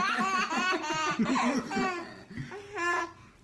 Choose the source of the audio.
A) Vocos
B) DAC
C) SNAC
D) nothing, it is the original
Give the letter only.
D